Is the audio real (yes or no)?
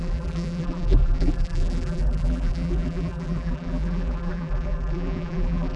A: no